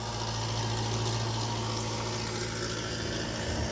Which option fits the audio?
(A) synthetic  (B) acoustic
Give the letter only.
B